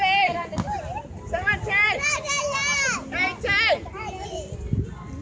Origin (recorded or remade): recorded